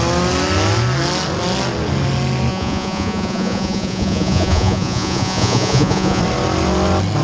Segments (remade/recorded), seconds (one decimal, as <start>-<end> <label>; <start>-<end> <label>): 0.0-2.5 recorded; 2.5-6.2 remade; 6.2-7.2 recorded